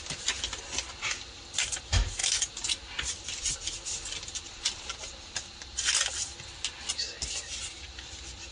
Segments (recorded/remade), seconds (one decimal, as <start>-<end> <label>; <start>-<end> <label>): 0.0-8.5 recorded